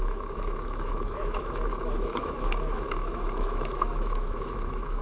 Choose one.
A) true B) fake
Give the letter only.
B